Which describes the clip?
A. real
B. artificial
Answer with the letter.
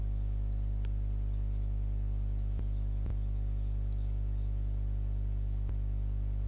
A